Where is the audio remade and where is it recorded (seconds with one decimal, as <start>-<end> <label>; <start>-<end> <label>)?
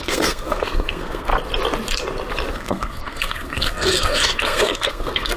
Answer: 0.0-1.3 remade; 1.3-2.5 recorded; 2.5-5.4 remade